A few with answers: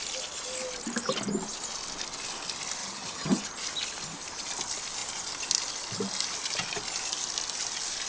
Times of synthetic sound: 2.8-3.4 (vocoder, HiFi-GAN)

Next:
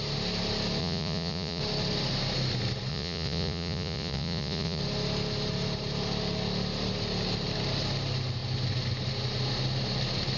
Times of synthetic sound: 0.8-1.6 (vocoder, Vocos); 2.9-4.8

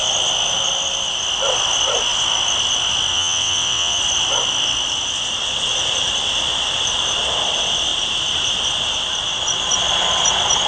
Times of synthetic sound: 3.1-4.0 (vocoder, WaveNeXt)

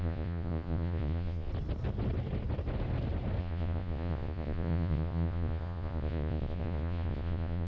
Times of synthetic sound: 0.0-1.5 (vocoder, Vocos); 3.4-7.7

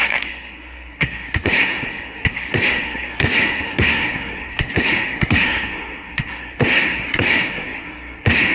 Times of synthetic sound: 0.0-8.5 (codec, SNAC)

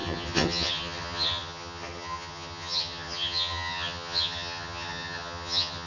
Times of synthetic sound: 0.0-5.9 (vocoder, HiFi-GAN)